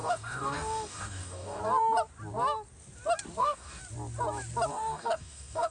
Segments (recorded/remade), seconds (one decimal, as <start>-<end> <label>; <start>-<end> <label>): 0.0-1.6 remade; 1.6-3.4 recorded; 3.4-3.8 remade; 3.8-4.7 recorded; 4.7-5.7 remade